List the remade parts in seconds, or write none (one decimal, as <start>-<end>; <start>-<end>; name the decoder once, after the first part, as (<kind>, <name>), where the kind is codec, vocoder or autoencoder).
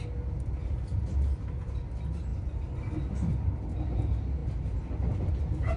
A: none